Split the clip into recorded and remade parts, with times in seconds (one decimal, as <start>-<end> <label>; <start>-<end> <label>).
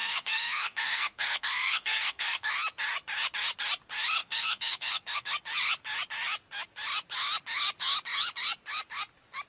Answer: 0.0-2.5 remade; 2.5-4.2 recorded; 4.2-5.3 remade; 5.3-9.5 recorded